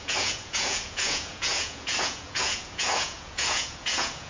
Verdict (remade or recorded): remade